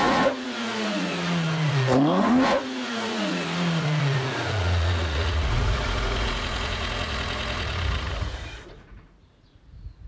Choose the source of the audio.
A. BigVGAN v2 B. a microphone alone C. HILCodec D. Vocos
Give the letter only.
D